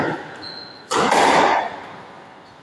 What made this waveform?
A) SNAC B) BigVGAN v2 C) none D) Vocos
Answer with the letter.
C